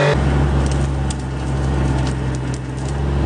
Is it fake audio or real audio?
real